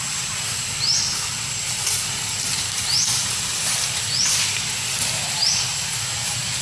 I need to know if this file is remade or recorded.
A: recorded